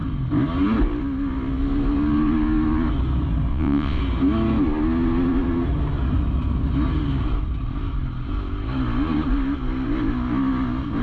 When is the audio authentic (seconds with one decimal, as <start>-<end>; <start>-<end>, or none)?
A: 0.0-3.5; 4.0-11.0